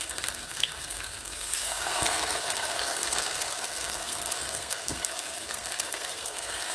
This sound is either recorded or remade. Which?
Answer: remade